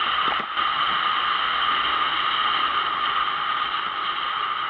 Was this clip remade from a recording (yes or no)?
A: no